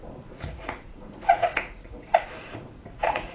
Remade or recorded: remade